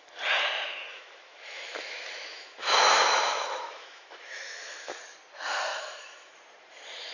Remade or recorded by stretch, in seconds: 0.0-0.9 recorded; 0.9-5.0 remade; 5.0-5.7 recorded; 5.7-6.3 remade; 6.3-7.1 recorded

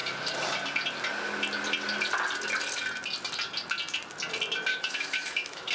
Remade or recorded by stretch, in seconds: 0.0-4.7 recorded; 4.7-5.7 remade

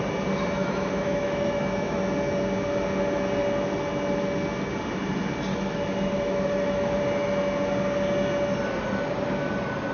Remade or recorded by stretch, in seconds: 0.0-0.6 recorded; 0.6-2.0 remade; 2.0-5.5 recorded; 5.5-7.0 remade; 7.0-9.9 recorded